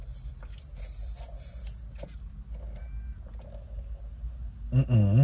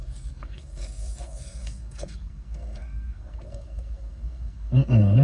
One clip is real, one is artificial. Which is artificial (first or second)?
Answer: second